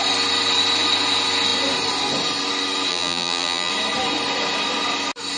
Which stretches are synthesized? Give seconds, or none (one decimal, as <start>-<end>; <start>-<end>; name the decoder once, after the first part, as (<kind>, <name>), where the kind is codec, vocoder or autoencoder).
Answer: 2.9-3.7 (vocoder, BigVGAN v2)